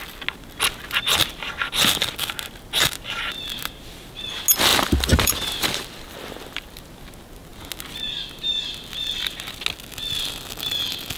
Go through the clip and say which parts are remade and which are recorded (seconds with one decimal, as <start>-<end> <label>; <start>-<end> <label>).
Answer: 0.0-4.7 recorded; 4.7-6.7 remade; 6.7-11.2 recorded